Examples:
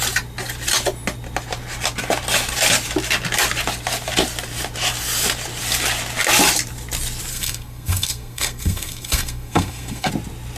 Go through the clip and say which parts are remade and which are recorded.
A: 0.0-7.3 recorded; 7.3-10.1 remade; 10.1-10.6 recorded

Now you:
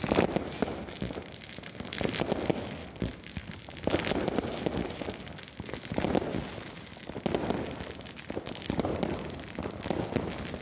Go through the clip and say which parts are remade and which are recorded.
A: 0.0-10.6 recorded

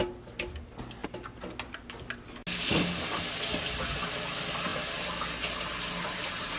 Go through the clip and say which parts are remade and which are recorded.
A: 0.0-6.6 recorded

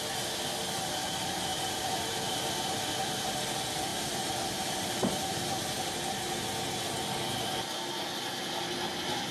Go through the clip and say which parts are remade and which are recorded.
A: 0.0-1.5 recorded; 1.5-2.4 remade; 2.4-3.9 recorded; 3.9-6.3 remade; 6.3-9.3 recorded

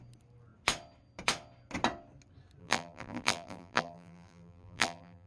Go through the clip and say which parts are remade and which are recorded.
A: 0.0-2.6 recorded; 2.6-5.3 remade

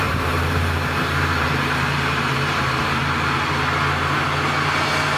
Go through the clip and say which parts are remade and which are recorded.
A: 0.0-3.0 remade; 3.0-5.2 recorded

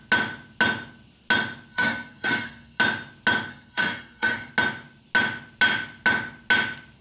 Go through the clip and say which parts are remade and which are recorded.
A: 0.0-1.7 recorded; 1.7-2.8 remade; 2.8-3.5 recorded; 3.5-4.5 remade; 4.5-7.0 recorded